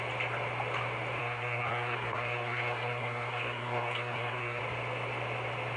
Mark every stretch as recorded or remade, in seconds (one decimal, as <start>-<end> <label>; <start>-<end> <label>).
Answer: 0.0-1.2 recorded; 1.2-4.6 remade; 4.6-5.8 recorded